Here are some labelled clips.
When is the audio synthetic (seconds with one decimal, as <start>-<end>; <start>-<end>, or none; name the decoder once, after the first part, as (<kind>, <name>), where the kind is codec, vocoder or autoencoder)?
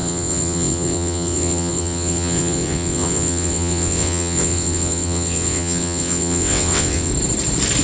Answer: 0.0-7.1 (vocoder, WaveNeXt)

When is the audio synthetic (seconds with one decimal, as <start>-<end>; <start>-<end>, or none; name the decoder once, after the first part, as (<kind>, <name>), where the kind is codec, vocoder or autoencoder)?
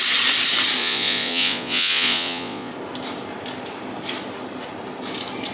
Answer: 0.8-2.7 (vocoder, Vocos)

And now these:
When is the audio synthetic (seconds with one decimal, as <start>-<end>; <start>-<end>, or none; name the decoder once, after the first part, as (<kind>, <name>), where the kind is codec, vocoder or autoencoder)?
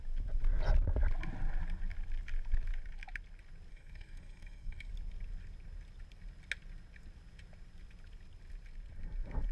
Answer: 3.7-4.9 (codec, SNAC)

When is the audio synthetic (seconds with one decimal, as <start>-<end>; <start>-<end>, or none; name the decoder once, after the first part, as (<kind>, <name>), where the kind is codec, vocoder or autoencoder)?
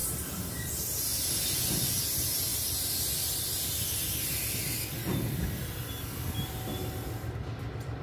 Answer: 0.0-0.7 (vocoder, BigVGAN v2)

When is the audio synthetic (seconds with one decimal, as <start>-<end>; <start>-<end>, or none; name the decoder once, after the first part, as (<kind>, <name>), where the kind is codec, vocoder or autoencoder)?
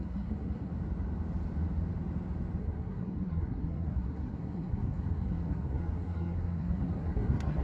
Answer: 0.0-0.7 (codec, SNAC); 2.6-7.6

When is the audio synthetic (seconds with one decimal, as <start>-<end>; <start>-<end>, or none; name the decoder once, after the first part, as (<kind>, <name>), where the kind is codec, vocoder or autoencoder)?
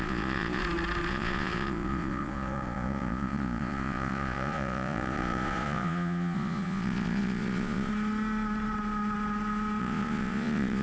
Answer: 0.0-0.6 (vocoder, Vocos); 1.1-7.9; 9.8-10.8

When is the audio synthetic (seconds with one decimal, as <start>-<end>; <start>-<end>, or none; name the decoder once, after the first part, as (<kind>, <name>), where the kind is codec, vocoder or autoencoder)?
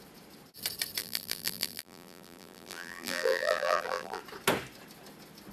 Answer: 1.0-4.2 (vocoder, BigVGAN v2)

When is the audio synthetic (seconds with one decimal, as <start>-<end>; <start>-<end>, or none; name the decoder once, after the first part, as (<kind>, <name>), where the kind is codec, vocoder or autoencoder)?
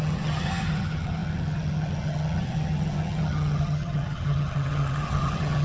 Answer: 0.0-5.6 (vocoder, HiFi-GAN)